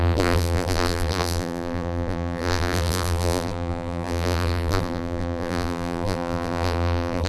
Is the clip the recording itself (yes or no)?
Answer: no